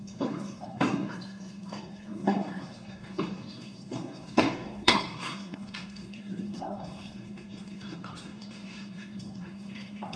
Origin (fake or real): fake